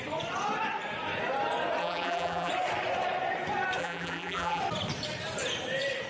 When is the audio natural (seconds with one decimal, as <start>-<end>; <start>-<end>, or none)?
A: 0.0-1.8; 2.5-3.8; 4.6-6.1